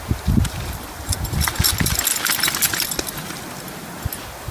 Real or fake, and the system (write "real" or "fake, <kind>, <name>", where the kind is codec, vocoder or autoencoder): real